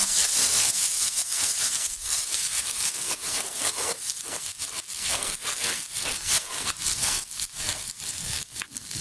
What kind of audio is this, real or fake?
fake